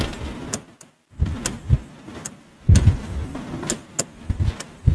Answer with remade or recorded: recorded